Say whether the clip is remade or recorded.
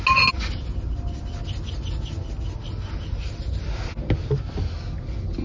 recorded